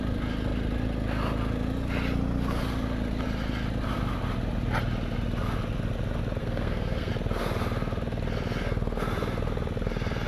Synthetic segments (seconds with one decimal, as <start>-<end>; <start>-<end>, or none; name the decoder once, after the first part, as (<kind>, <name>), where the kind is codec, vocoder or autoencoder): 6.4-7.1 (codec, SNAC)